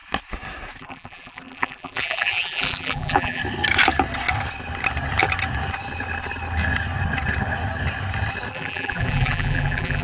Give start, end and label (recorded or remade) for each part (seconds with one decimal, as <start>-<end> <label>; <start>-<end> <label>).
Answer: 0.0-0.8 recorded; 0.8-3.4 remade; 3.4-8.5 recorded; 8.5-10.0 remade